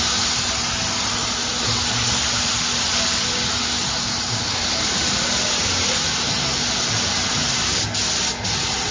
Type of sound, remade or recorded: recorded